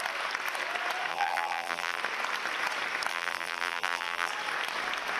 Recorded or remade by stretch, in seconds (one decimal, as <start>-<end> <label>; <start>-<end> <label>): 0.0-1.1 recorded; 1.1-2.0 remade; 2.0-3.1 recorded; 3.1-4.3 remade; 4.3-5.2 recorded